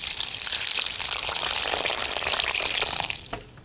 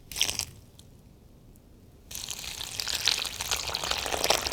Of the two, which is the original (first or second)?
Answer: second